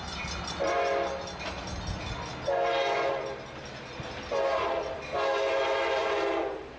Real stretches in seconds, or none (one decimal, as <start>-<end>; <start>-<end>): 0.0-3.1; 3.6-6.0